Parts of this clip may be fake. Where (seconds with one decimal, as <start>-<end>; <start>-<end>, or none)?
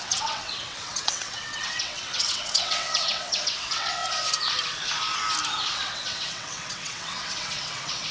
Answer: 0.0-4.0; 5.6-8.1